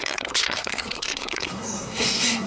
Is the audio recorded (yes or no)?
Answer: no